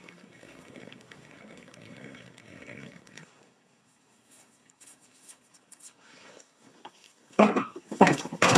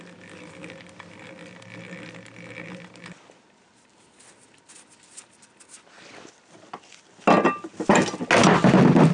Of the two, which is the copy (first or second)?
first